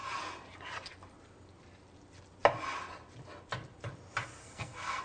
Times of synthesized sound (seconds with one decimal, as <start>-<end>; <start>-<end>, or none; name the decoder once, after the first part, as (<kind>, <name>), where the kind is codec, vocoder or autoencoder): 4.4-5.0 (codec, SNAC)